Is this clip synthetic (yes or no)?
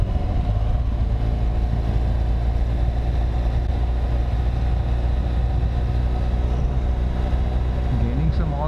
no